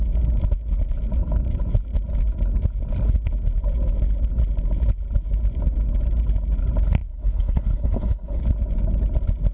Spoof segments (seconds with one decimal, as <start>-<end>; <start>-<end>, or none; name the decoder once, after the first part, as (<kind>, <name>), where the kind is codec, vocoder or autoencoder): 7.1-8.4 (codec, HILCodec)